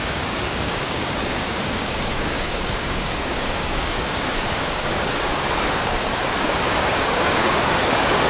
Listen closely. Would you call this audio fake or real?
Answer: fake